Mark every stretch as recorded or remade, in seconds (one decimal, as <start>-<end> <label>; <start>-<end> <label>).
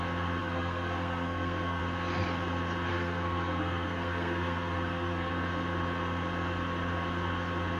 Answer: 0.0-0.4 recorded; 0.4-1.8 remade; 1.8-2.9 recorded; 2.9-5.3 remade; 5.3-7.8 recorded